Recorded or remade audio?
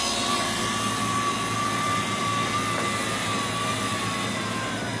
recorded